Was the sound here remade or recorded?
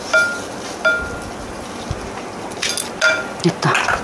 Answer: recorded